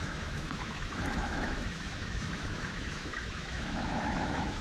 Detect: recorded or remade remade